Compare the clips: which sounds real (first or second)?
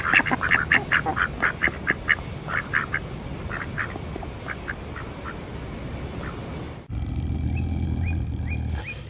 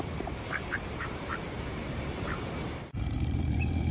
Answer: first